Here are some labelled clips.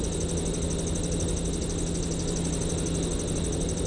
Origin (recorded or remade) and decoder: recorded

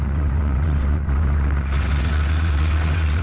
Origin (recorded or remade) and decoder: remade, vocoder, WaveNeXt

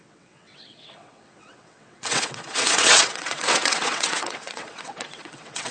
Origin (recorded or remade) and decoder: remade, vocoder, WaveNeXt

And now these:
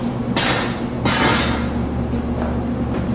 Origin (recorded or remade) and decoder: recorded